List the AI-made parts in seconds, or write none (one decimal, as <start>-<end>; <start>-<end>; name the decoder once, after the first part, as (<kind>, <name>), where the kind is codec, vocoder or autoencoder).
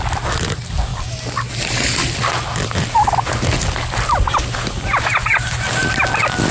none